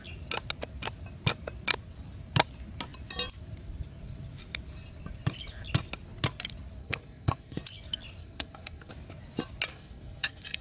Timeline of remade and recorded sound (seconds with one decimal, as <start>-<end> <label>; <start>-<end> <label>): 0.0-6.8 recorded; 6.8-7.6 remade; 7.6-8.2 recorded; 8.2-8.9 remade; 8.9-9.7 recorded; 9.7-10.6 remade